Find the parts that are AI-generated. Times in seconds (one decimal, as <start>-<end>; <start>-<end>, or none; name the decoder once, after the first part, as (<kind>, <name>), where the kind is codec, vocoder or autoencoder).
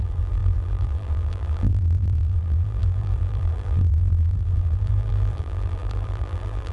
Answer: 0.0-6.7 (vocoder, BigVGAN v2)